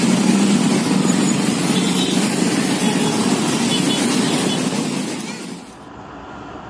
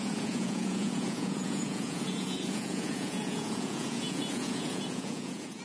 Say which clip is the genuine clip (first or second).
first